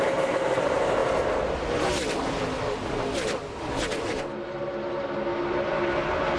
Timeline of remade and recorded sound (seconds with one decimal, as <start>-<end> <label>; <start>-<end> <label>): 0.0-6.4 recorded